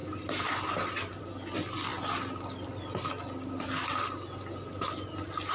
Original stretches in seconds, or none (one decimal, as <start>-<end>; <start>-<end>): 1.2-5.5